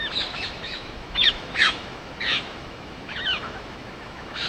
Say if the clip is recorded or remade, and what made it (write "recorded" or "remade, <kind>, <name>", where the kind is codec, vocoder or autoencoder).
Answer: remade, autoencoder, DAC-VAE